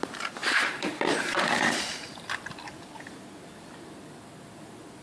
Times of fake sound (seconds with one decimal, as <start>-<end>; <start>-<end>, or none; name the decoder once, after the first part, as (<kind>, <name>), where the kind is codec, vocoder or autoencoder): 0.4-2.3 (vocoder, BigVGAN v2)